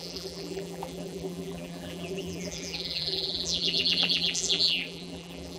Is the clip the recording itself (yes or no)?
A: no